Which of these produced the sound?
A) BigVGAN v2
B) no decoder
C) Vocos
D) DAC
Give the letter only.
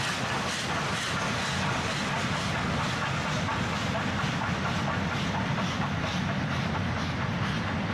B